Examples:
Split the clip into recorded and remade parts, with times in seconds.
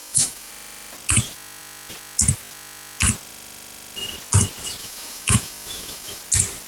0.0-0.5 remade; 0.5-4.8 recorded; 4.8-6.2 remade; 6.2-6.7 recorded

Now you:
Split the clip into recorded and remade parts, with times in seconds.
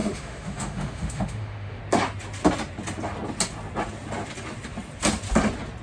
0.0-1.8 remade; 1.8-5.8 recorded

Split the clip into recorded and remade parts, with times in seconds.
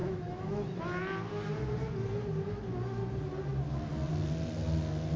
0.0-0.8 remade; 0.8-5.2 recorded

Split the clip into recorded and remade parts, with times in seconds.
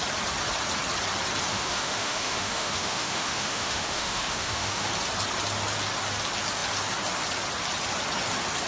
0.0-1.5 recorded; 1.5-4.9 remade; 4.9-8.7 recorded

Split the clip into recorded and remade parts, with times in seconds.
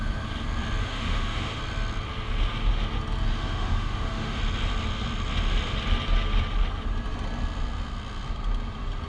0.0-0.8 recorded; 0.8-1.6 remade; 1.6-3.4 recorded; 3.4-4.4 remade; 4.4-9.1 recorded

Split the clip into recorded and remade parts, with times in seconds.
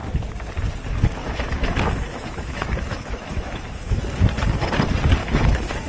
0.0-1.2 recorded; 1.2-4.0 remade; 4.0-5.2 recorded; 5.2-5.9 remade